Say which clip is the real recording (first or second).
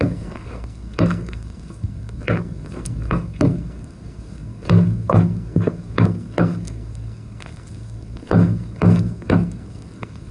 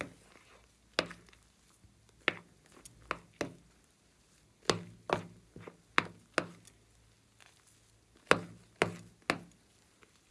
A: second